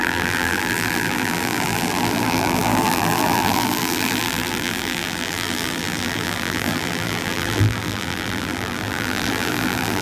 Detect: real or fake fake